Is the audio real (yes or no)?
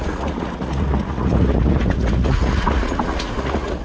no